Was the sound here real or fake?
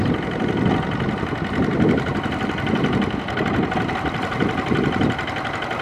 real